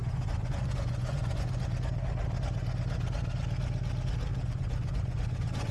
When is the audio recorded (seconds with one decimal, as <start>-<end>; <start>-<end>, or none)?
1.6-4.3